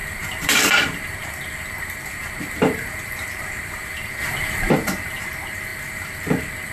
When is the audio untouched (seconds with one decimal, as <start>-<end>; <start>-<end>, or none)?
none